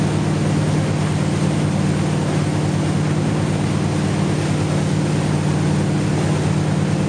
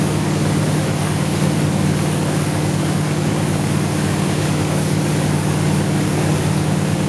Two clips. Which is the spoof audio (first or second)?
second